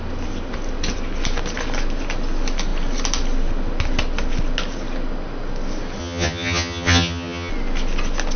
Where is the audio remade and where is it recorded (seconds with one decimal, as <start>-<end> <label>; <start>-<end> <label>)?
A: 0.0-6.0 recorded; 6.0-7.5 remade; 7.5-8.4 recorded